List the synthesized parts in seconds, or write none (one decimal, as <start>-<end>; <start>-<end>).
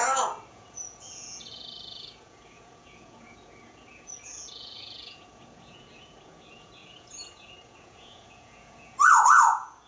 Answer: 0.5-9.9